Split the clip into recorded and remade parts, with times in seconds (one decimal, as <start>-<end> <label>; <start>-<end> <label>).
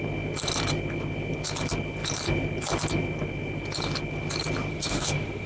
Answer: 0.0-4.7 recorded; 4.7-5.5 remade